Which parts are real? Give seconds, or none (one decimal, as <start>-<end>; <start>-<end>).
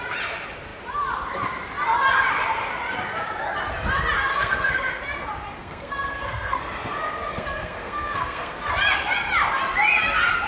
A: 0.0-4.3; 5.0-5.6; 6.6-7.3; 8.7-10.5